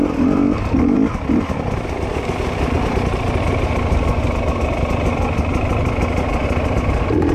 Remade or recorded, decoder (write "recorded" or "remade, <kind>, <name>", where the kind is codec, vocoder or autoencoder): recorded